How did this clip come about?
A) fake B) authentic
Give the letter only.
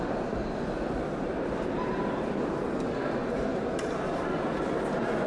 B